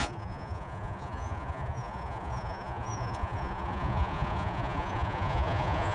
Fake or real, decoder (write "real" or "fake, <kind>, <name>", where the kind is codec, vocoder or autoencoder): fake, vocoder, Vocos